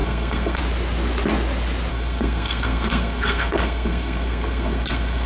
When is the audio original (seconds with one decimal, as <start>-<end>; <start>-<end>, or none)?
0.6-1.9